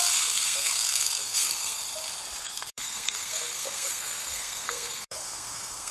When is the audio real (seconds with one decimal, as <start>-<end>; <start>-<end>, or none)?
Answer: 1.8-2.4